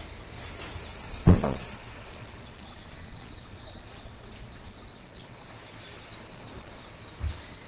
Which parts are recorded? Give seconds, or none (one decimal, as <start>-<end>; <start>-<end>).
0.0-0.9; 5.5-6.3; 6.8-7.7